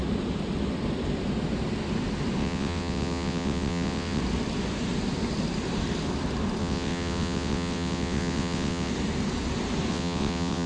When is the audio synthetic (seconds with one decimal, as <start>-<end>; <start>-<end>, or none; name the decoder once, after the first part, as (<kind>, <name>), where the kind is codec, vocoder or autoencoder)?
2.4-4.2 (vocoder, WaveNeXt); 6.6-8.9; 9.9-10.7